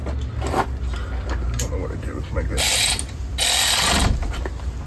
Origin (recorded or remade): recorded